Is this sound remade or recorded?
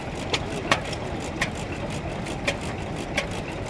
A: recorded